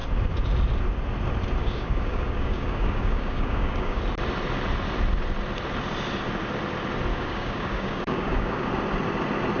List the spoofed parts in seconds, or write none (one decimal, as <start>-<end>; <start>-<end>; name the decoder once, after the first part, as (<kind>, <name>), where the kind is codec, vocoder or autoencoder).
1.6-4.0 (codec, DAC); 7.1-8.7